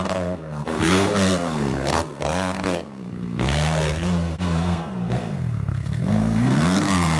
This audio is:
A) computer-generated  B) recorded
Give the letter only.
A